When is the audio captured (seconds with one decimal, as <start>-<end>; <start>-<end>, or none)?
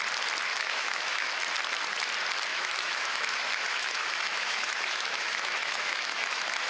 0.0-0.5; 1.3-2.5